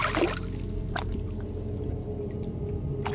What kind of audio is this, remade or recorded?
recorded